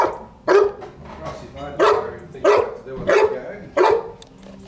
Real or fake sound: real